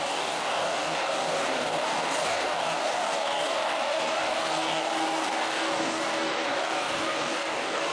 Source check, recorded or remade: remade